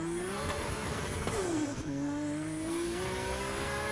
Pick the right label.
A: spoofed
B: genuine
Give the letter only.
A